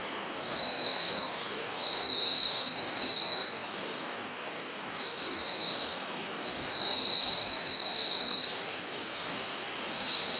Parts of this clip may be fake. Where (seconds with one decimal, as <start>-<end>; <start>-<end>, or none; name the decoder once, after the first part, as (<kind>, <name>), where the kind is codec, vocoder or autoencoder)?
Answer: 0.0-10.4 (codec, DAC)